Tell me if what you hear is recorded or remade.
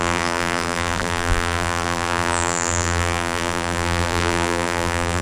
remade